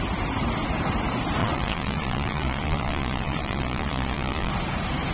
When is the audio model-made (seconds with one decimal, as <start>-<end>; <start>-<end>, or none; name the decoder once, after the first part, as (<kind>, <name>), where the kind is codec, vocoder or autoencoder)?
1.4-4.5 (vocoder, Vocos)